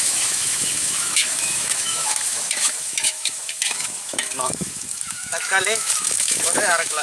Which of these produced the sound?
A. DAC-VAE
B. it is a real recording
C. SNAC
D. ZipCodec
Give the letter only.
A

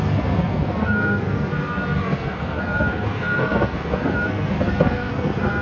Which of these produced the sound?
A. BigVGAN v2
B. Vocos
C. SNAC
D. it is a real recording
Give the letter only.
C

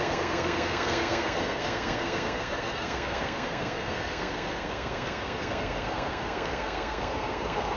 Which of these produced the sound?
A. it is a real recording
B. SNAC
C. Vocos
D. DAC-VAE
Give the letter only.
B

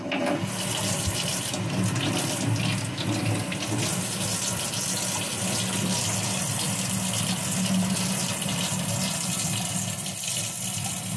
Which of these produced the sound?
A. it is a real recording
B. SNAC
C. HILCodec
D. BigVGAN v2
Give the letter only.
A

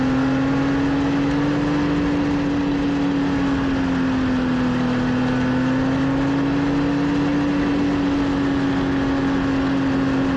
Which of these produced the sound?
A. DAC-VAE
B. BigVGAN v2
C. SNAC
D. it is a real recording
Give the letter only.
D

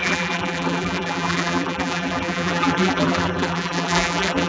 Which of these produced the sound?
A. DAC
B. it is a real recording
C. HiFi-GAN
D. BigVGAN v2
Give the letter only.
D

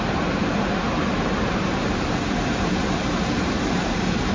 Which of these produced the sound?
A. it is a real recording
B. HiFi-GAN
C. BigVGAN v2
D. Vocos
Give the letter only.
C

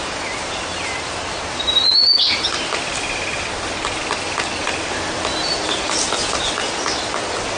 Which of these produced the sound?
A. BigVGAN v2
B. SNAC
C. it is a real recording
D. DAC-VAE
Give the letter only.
C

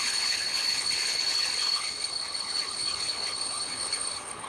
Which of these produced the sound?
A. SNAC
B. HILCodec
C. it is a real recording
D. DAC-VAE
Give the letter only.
B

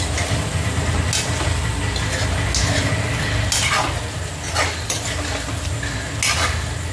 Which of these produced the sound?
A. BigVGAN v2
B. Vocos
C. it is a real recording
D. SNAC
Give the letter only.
C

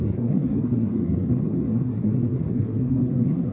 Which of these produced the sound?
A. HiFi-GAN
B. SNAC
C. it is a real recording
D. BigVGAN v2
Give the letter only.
B